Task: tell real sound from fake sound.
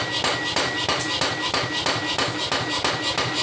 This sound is real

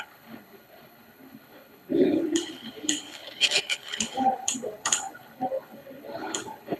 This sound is fake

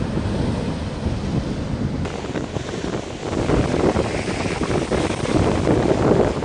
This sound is real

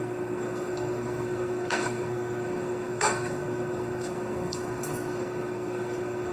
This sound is fake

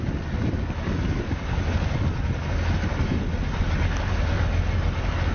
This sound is real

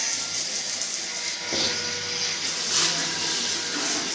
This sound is real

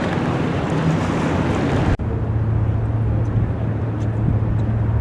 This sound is real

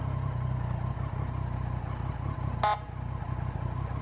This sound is real